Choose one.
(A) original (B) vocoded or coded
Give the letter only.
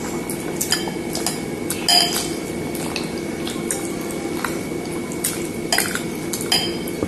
A